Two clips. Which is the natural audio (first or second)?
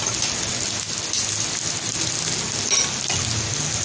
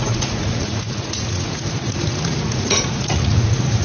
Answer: first